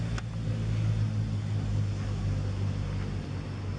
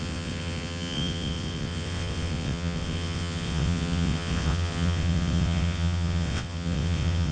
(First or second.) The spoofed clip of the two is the second